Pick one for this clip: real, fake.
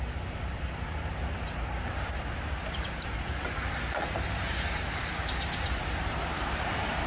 fake